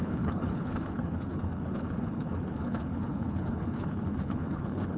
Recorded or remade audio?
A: remade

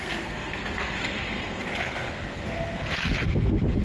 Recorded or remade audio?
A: remade